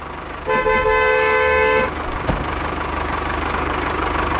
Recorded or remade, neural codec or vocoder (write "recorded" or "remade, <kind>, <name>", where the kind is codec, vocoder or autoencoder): remade, codec, DAC